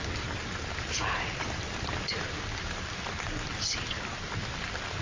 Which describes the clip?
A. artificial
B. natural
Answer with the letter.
B